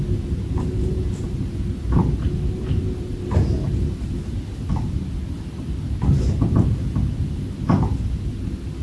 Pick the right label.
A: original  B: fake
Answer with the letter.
A